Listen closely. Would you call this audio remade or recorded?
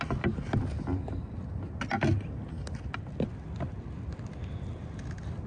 recorded